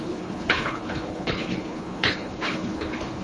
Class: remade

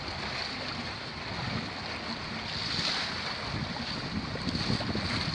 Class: recorded